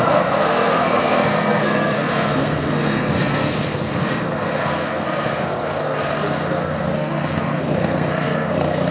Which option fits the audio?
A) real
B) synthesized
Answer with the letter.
B